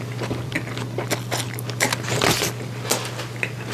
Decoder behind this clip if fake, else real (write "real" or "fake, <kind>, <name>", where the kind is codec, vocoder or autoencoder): real